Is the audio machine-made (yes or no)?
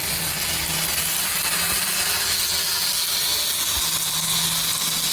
no